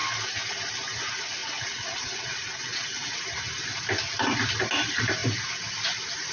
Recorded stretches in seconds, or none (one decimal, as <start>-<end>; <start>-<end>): 0.0-1.4; 3.2-6.3